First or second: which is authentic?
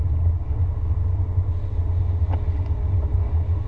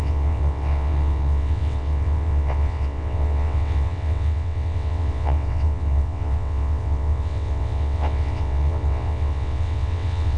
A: first